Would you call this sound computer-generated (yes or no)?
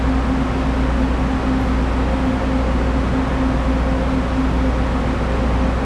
no